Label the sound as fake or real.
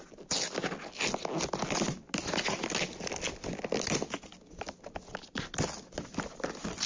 real